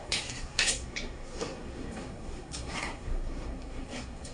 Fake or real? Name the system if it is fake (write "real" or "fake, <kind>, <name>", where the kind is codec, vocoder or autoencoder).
fake, codec, SNAC